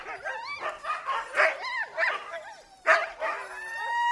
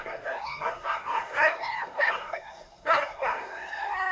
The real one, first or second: first